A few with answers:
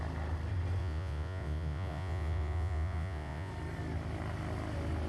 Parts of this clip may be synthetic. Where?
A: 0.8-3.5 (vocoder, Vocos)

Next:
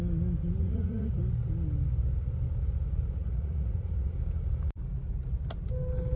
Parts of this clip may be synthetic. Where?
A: 0.6-1.2 (vocoder, Vocos); 3.2-4.1

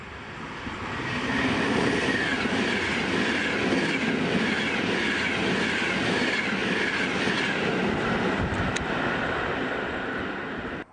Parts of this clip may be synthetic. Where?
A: none

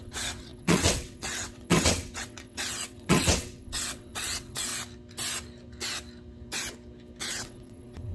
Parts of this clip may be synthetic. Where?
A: 0.0-4.7 (vocoder, WaveNeXt); 7.2-8.1

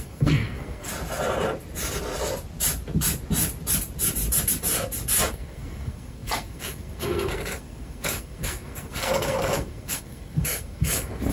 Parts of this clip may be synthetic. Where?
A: 0.0-0.9 (codec, SNAC); 5.3-11.3